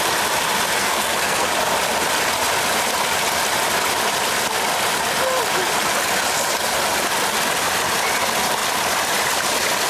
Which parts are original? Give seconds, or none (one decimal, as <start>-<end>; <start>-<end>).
0.0-0.8; 1.5-9.9